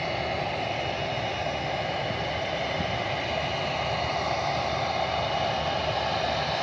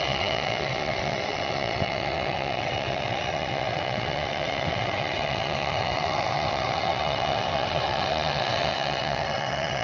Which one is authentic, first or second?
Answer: first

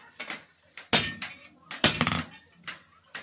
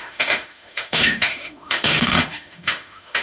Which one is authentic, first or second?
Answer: first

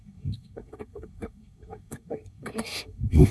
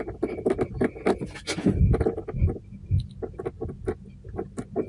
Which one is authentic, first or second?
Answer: second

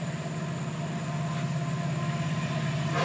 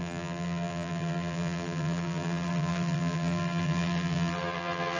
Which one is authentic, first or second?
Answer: first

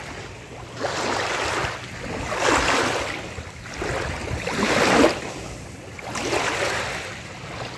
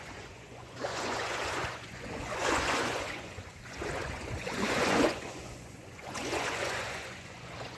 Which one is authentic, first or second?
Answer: first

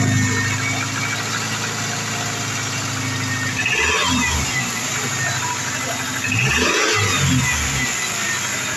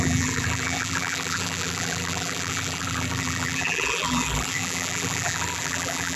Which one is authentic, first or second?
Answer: first